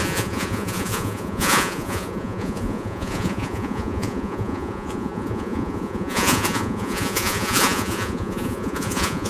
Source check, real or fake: fake